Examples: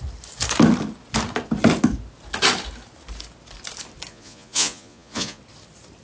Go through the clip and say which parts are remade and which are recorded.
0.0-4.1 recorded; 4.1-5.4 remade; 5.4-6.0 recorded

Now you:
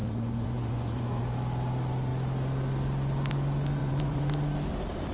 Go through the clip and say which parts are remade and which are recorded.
0.0-1.2 remade; 1.2-3.8 recorded; 3.8-4.3 remade; 4.3-5.1 recorded

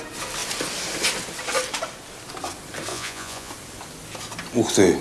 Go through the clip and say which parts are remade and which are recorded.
0.0-2.9 recorded; 2.9-3.5 remade; 3.5-5.0 recorded

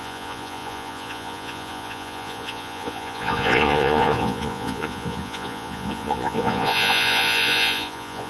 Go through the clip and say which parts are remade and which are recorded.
0.0-8.3 remade

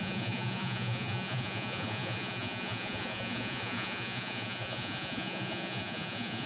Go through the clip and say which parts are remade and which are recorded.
0.0-6.5 remade

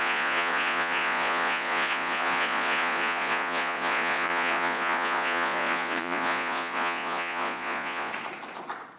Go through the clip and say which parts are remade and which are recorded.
0.0-8.1 remade; 8.1-9.0 recorded

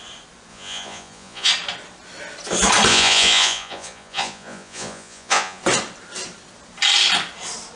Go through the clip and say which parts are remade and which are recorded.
0.0-0.5 recorded; 0.5-1.5 remade; 1.5-2.9 recorded; 2.9-5.6 remade; 5.6-7.8 recorded